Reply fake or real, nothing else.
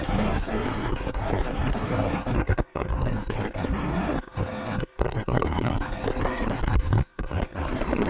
fake